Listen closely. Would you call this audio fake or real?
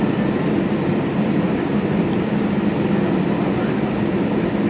real